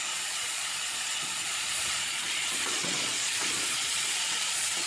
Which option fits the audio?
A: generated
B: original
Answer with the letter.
A